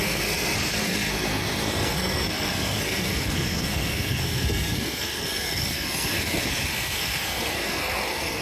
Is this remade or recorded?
remade